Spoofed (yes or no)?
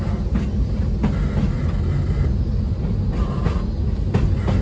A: no